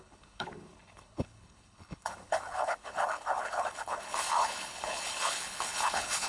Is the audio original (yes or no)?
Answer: no